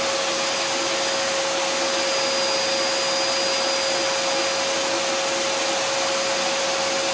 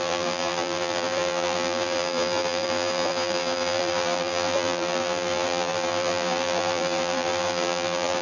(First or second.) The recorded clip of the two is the first